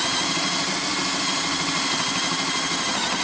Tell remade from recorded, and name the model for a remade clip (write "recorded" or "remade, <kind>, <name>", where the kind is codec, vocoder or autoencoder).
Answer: recorded